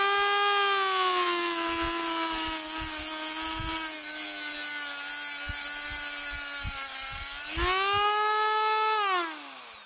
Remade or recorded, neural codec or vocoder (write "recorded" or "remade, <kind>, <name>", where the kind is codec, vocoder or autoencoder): recorded